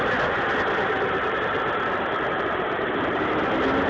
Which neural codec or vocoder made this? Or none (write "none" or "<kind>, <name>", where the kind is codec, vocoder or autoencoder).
none